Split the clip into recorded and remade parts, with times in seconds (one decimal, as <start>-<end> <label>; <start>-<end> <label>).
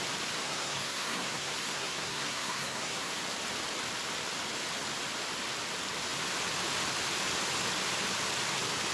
0.0-0.4 recorded; 0.4-3.1 remade; 3.1-8.9 recorded